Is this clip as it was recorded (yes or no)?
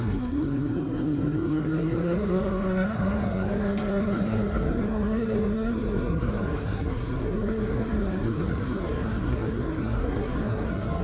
no